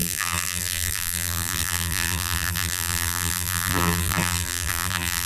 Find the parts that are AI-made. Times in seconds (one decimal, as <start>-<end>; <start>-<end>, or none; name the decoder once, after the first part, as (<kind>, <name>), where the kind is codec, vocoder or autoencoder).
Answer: 0.0-5.3 (vocoder, BigVGAN v2)